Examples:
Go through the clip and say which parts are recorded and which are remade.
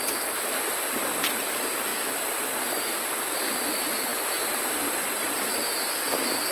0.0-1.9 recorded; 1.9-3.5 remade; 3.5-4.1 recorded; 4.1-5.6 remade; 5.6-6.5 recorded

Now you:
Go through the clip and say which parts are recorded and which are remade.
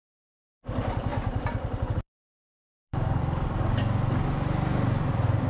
0.0-1.1 recorded; 1.1-3.2 remade; 3.2-5.5 recorded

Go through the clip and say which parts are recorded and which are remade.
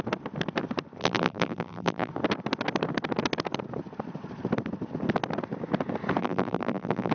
0.0-1.0 recorded; 1.0-2.1 remade; 2.1-6.2 recorded; 6.2-7.1 remade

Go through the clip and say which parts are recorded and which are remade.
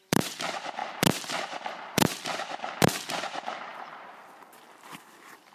0.0-0.8 remade; 0.8-1.4 recorded; 1.4-5.5 remade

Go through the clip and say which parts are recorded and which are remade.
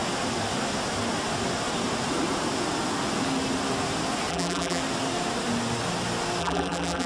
0.0-4.3 recorded; 4.3-4.8 remade; 4.8-6.4 recorded; 6.4-7.1 remade